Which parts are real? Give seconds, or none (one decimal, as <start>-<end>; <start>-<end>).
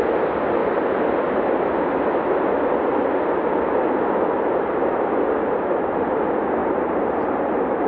0.0-0.6; 1.2-6.6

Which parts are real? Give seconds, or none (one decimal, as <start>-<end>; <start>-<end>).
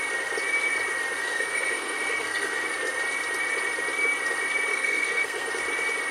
0.0-1.2; 2.7-4.7; 5.5-6.1